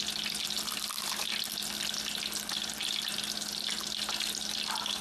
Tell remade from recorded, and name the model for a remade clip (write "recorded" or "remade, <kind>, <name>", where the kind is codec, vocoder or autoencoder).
recorded